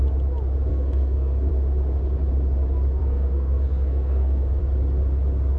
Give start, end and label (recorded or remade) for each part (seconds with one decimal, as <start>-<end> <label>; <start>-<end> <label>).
0.0-0.7 recorded; 0.7-1.5 remade; 1.5-3.0 recorded; 3.0-4.6 remade; 4.6-5.6 recorded